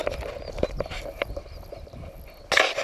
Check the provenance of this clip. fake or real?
real